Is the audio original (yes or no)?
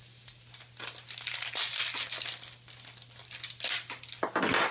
yes